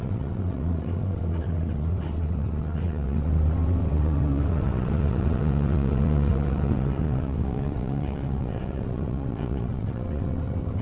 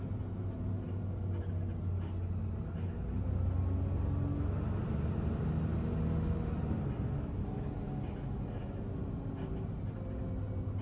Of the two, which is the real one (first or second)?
second